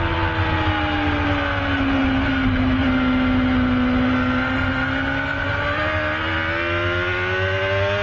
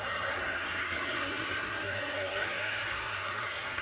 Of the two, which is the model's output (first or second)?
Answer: second